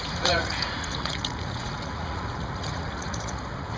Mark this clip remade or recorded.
remade